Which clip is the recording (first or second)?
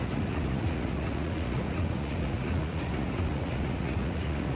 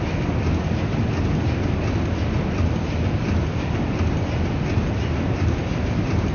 second